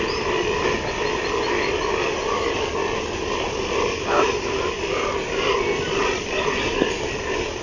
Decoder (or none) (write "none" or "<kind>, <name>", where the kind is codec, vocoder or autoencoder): none